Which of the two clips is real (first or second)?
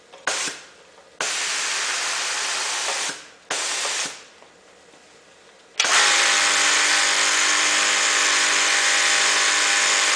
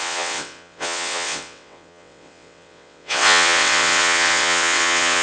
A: first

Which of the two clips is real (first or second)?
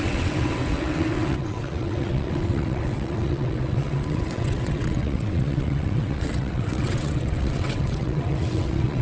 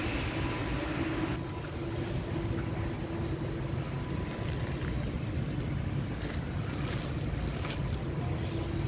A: second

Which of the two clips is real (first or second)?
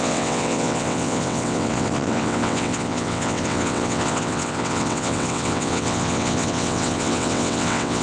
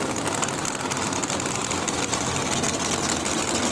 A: second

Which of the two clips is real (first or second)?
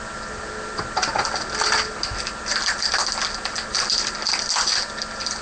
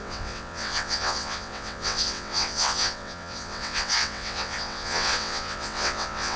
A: first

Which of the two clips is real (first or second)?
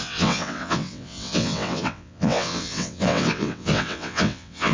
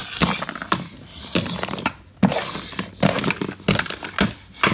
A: second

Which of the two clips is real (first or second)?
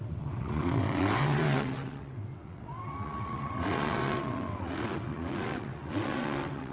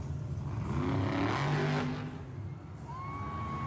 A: second